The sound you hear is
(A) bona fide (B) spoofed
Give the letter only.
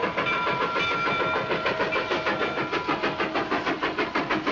A